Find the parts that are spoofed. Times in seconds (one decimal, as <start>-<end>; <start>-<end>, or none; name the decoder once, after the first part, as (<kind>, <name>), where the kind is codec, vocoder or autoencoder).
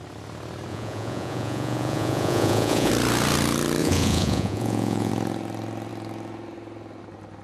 0.7-2.9 (vocoder, Vocos); 3.8-5.1